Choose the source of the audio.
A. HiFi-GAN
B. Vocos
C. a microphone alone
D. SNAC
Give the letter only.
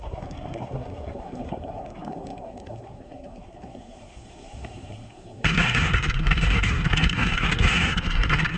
D